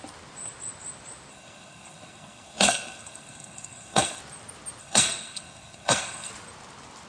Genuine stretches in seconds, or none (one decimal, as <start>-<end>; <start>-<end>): 0.0-1.3; 4.2-4.8; 6.3-7.1